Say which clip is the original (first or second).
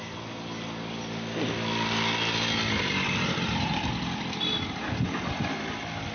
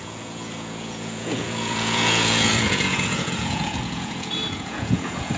first